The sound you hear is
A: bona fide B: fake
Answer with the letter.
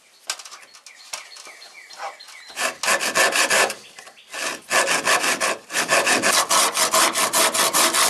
A